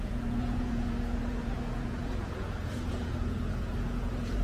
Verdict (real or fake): fake